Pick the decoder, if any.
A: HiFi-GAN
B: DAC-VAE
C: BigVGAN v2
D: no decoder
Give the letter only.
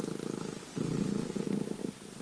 D